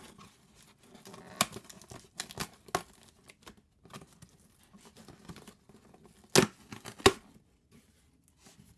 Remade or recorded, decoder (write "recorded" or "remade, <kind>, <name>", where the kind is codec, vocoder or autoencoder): recorded